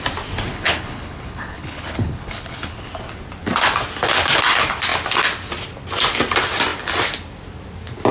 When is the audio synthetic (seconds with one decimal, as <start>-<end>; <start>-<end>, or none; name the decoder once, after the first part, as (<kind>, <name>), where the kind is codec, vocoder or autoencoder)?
0.5-2.9 (codec, HILCodec)